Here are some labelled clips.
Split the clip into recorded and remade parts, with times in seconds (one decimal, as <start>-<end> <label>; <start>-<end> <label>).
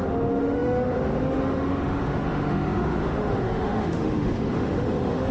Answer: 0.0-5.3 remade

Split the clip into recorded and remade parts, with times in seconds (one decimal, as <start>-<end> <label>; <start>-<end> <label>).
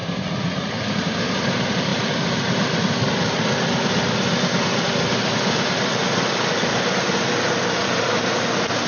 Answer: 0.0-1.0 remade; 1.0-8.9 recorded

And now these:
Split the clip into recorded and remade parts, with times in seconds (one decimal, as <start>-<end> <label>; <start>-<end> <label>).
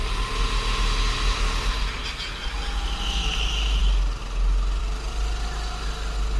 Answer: 0.0-6.4 recorded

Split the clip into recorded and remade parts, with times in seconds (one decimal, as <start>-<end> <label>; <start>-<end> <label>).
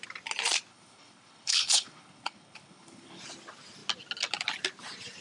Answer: 0.0-0.7 recorded; 0.7-3.2 remade; 3.2-5.2 recorded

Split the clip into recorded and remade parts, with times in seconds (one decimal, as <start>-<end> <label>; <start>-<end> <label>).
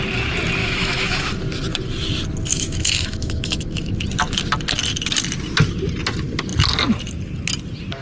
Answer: 0.0-0.6 recorded; 0.6-1.3 remade; 1.3-2.5 recorded; 2.5-3.9 remade; 3.9-8.0 recorded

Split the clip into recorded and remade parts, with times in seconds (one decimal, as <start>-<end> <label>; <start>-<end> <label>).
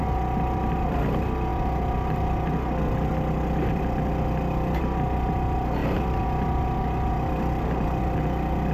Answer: 0.0-8.7 recorded